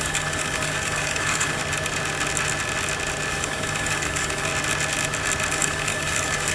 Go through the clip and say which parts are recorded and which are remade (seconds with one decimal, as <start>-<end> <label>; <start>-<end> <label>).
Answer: 0.0-1.6 remade; 1.6-3.3 recorded; 3.3-4.5 remade; 4.5-5.5 recorded; 5.5-6.5 remade